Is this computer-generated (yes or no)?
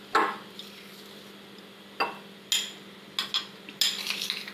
no